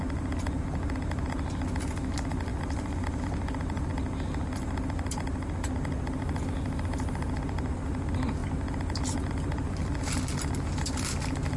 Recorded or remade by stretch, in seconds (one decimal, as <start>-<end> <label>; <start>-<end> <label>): 0.0-11.6 recorded